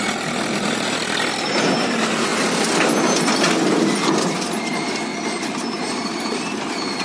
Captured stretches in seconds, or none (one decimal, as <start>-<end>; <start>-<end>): 0.0-5.1